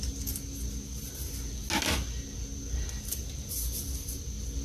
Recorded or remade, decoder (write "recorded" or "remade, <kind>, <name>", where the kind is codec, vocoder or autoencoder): recorded